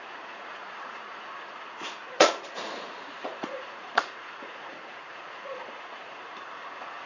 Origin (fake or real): fake